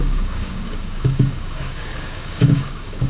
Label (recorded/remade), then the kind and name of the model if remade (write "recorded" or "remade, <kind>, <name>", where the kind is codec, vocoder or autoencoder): remade, codec, DAC